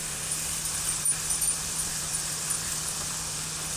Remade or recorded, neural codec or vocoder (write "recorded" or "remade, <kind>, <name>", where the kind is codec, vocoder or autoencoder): remade, vocoder, BigVGAN v2